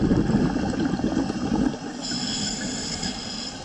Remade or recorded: recorded